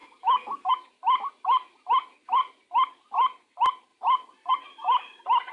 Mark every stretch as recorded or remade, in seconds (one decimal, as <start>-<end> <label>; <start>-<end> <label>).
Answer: 0.0-0.7 remade; 0.7-5.5 recorded

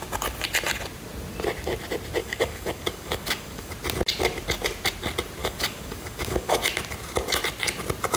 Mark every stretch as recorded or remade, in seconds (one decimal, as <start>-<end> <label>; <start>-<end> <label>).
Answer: 0.0-2.2 recorded; 2.2-3.7 remade; 3.7-5.4 recorded; 5.4-6.6 remade; 6.6-8.2 recorded

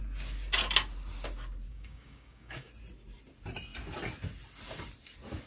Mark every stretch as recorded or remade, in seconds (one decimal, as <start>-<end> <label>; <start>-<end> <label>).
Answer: 0.0-1.7 recorded; 1.7-2.7 remade; 2.7-5.5 recorded

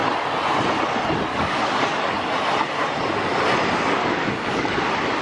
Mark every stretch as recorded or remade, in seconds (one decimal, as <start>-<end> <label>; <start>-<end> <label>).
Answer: 0.0-1.3 recorded; 1.3-2.3 remade; 2.3-4.0 recorded; 4.0-4.8 remade; 4.8-5.2 recorded

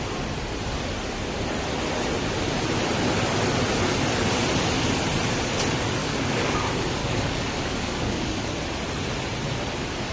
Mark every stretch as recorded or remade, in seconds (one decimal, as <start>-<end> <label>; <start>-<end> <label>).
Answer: 0.0-6.0 recorded; 6.0-6.6 remade; 6.6-7.0 recorded; 7.0-8.5 remade; 8.5-10.1 recorded

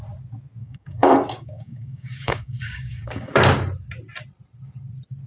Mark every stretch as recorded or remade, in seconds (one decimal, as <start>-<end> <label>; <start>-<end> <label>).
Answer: 0.0-0.6 recorded; 0.6-3.4 remade; 3.4-5.3 recorded

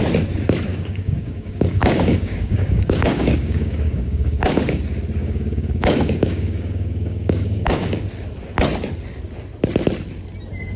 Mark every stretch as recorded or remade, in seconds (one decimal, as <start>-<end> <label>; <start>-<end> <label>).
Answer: 0.0-0.7 recorded; 0.7-4.8 remade; 4.8-5.2 recorded; 5.2-8.0 remade; 8.0-10.8 recorded